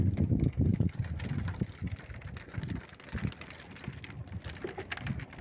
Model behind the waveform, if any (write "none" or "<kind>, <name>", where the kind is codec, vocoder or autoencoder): none